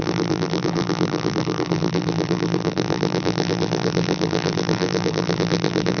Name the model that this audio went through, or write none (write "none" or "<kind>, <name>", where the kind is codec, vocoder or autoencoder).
vocoder, BigVGAN v2